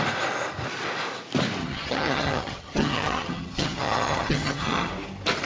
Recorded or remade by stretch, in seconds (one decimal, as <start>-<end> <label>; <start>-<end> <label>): 0.0-1.6 recorded; 1.6-4.9 remade; 4.9-5.5 recorded